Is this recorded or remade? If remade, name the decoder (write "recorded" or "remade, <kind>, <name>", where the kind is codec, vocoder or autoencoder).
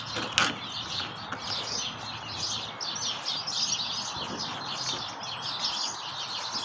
recorded